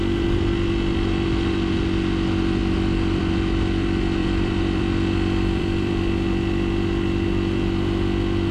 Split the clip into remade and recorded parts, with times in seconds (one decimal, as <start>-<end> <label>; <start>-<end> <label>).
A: 0.0-4.2 recorded; 4.2-5.9 remade; 5.9-8.5 recorded